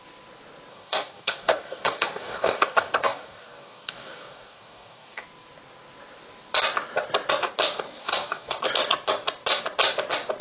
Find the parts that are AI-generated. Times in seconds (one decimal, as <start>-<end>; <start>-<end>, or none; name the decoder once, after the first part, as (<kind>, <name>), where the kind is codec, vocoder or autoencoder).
0.7-5.2 (codec, DAC); 8.0-8.6